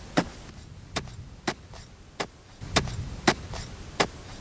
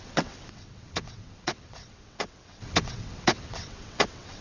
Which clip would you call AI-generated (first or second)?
second